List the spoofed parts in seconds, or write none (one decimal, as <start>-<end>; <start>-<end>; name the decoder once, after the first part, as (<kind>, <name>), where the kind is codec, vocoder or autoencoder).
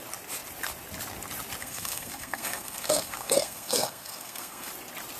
1.6-4.7 (codec, SNAC)